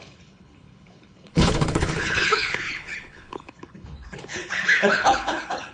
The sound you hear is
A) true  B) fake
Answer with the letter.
B